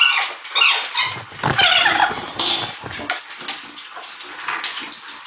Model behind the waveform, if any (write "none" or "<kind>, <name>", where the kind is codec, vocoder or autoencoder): none